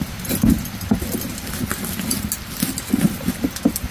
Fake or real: real